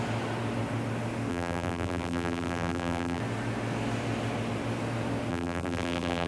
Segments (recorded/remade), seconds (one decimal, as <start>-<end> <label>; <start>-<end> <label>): 0.0-1.3 recorded; 1.3-3.2 remade; 3.2-5.3 recorded; 5.3-6.3 remade